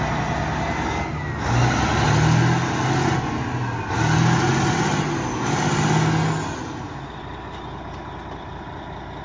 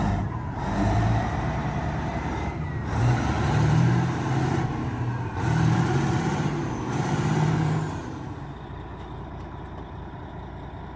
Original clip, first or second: first